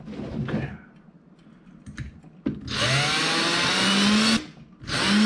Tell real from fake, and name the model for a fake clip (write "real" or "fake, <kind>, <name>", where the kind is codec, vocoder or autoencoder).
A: real